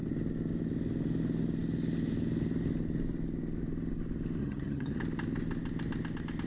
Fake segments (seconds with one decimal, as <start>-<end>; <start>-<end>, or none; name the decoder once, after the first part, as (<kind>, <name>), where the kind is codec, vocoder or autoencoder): 4.4-5.0 (vocoder, HiFi-GAN)